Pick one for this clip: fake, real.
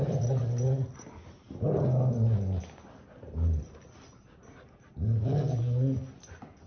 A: real